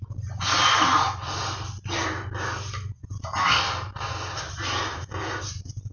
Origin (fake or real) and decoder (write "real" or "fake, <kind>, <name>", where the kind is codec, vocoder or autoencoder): real